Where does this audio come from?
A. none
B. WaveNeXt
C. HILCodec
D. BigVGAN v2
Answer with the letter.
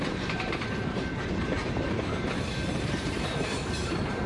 D